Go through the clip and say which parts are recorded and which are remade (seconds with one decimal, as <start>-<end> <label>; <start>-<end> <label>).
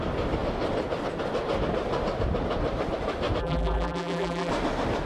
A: 0.0-3.4 recorded; 3.4-4.5 remade; 4.5-5.1 recorded